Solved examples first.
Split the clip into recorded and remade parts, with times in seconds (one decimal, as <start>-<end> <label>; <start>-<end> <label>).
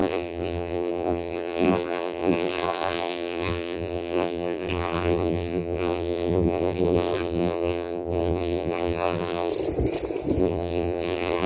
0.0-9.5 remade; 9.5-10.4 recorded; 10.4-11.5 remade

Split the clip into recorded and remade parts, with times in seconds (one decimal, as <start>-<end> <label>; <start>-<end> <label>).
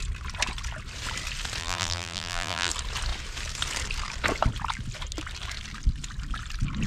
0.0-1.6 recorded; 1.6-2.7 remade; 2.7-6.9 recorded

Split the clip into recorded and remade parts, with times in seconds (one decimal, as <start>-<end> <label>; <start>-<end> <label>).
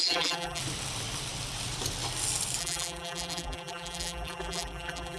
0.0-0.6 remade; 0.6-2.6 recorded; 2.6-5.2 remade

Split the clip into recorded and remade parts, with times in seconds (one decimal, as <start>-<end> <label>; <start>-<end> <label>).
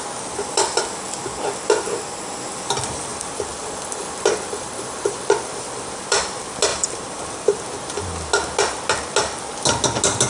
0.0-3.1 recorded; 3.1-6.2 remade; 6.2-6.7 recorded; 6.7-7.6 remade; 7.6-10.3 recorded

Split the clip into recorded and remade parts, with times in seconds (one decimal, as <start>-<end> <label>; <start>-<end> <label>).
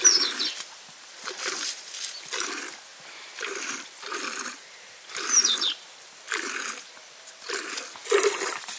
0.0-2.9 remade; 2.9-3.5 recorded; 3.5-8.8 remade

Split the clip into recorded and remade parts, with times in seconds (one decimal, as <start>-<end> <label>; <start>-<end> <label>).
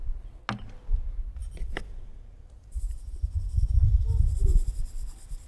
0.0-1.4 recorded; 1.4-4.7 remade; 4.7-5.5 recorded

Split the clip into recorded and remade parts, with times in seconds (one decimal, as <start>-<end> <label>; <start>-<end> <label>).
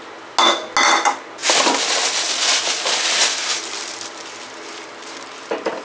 0.0-1.4 recorded; 1.4-2.8 remade; 2.8-3.2 recorded; 3.2-4.9 remade; 4.9-5.8 recorded